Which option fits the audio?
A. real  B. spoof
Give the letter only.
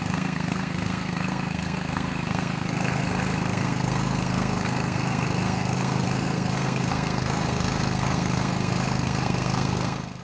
B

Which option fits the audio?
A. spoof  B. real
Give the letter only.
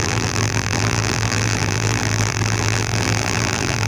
A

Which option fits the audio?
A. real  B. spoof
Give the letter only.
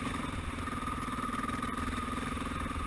B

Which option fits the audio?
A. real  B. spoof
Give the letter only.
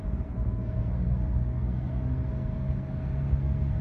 B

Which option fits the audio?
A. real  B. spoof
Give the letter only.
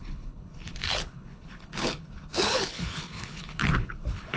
B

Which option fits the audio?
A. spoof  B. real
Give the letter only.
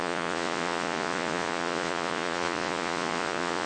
A